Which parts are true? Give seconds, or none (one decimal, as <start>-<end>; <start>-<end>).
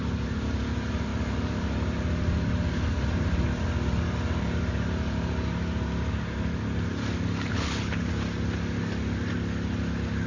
0.0-7.5; 8.1-10.3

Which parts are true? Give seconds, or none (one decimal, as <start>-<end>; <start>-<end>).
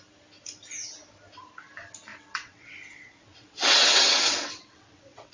0.0-2.1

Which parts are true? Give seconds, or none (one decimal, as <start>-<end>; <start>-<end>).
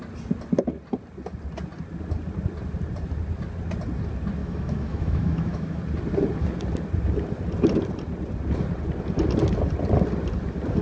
0.0-4.4; 5.8-10.8